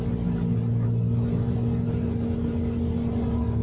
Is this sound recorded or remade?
recorded